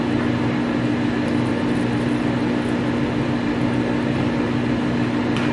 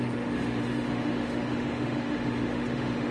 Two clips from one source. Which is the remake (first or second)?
second